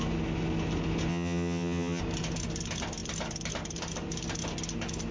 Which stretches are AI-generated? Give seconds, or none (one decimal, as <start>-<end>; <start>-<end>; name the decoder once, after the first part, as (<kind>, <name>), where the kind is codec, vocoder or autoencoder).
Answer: 1.1-2.0 (vocoder, HiFi-GAN)